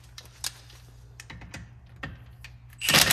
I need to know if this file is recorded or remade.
recorded